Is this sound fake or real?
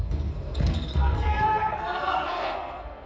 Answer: fake